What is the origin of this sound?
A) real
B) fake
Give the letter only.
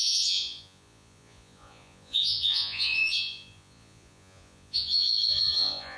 B